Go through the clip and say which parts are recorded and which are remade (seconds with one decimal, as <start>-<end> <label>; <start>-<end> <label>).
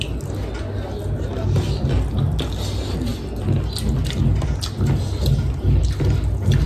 0.0-6.7 recorded